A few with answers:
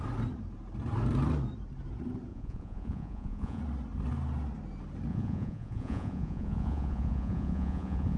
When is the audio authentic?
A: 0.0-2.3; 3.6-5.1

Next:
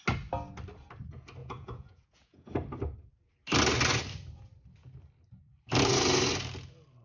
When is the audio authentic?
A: 0.0-1.4; 2.5-7.0

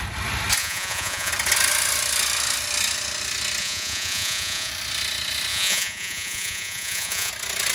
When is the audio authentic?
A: 0.0-0.6; 1.3-3.6; 4.7-5.5; 7.3-7.7

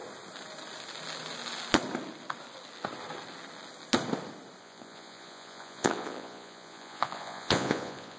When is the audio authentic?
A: 0.0-4.6

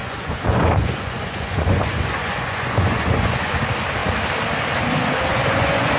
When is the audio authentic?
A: 3.6-5.3

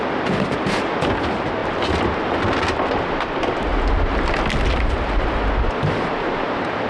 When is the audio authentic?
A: 0.0-6.9

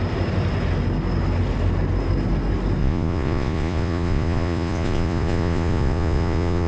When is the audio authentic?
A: 0.0-2.8

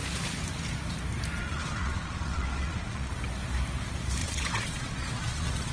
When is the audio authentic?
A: 0.0-1.4; 3.1-4.2